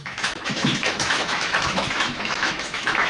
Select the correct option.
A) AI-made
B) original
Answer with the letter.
A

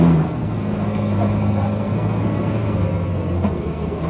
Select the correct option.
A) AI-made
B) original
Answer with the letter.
A